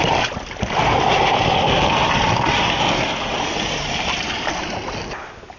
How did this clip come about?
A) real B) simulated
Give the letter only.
A